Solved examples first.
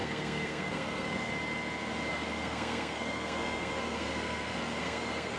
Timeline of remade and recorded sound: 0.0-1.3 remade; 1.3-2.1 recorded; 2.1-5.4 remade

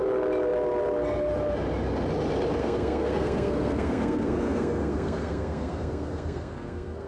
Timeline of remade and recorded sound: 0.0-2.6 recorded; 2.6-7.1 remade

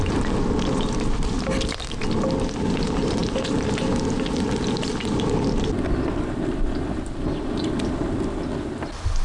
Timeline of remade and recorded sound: 0.0-9.2 recorded

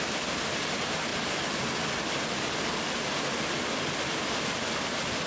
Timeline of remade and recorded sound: 0.0-5.3 recorded

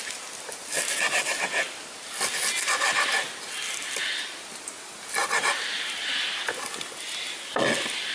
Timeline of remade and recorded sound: 0.0-8.1 recorded

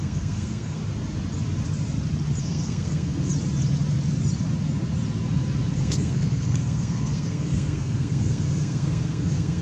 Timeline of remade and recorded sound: 0.0-0.8 remade; 0.8-2.4 recorded; 2.4-3.3 remade; 3.3-5.7 recorded; 5.7-9.6 remade

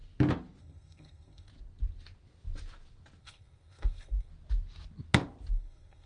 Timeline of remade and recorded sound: 0.0-0.6 recorded; 0.6-1.5 remade; 1.5-3.2 recorded; 3.2-4.3 remade; 4.3-5.5 recorded; 5.5-6.1 remade